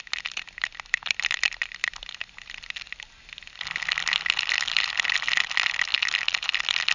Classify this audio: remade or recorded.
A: recorded